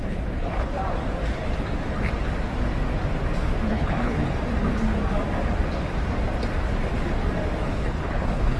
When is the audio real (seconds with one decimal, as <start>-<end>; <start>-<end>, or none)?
0.8-3.7; 4.2-7.7